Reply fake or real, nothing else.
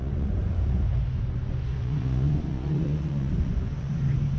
fake